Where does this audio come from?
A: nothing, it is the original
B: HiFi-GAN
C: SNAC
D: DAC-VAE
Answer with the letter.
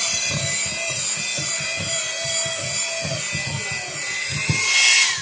A